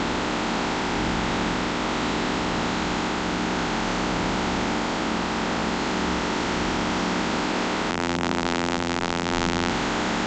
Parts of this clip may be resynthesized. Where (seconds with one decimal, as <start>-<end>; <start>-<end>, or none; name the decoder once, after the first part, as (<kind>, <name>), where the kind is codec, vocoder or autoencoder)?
7.9-9.7 (vocoder, BigVGAN v2)

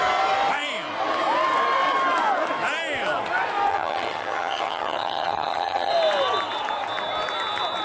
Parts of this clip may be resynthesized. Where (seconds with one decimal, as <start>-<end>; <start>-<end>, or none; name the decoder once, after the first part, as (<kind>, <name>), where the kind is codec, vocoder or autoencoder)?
3.7-5.9 (vocoder, HiFi-GAN)

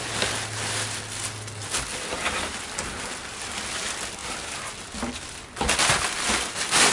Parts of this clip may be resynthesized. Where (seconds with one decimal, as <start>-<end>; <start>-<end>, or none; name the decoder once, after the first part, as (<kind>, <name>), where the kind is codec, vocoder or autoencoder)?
none

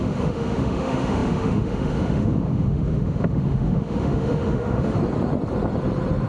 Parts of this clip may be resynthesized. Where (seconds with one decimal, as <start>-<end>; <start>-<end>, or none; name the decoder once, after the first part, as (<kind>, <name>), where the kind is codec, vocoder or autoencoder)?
0.0-5.0 (autoencoder, DAC-VAE)

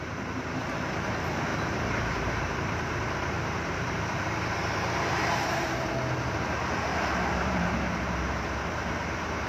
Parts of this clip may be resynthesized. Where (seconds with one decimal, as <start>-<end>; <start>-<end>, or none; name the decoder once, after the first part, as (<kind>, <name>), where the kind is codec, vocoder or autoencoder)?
1.5-5.9 (vocoder, BigVGAN v2); 6.9-7.8

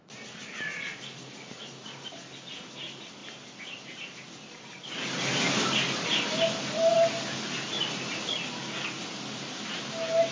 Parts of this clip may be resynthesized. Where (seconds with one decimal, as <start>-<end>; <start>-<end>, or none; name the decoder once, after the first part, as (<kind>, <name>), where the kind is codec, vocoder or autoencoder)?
none

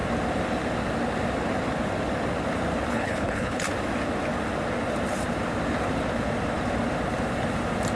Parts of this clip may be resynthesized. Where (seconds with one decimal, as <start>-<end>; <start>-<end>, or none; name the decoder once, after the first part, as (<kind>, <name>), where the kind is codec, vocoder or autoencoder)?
2.9-3.6 (codec, HILCodec)